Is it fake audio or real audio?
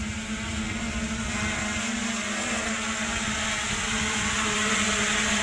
real